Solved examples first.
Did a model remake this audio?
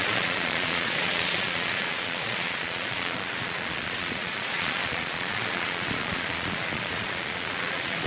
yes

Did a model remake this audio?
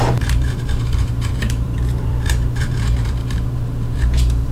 yes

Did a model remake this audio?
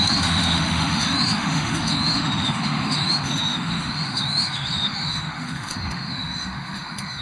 yes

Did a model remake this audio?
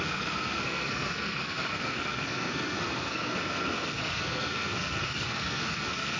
yes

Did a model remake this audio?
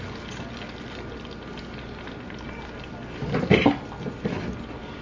no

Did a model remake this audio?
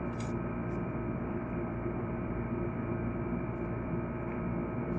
yes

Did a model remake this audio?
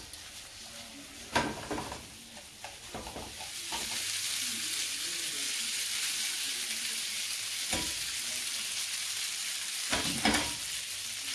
no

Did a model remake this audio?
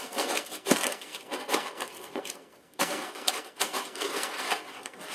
yes